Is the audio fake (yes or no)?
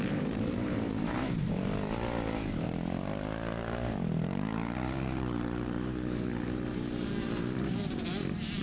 yes